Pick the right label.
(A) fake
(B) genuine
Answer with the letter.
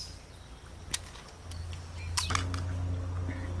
B